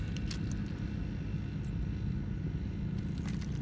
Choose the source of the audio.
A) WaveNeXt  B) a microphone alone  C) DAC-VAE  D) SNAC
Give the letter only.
B